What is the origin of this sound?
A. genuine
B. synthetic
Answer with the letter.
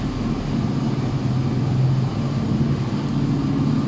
A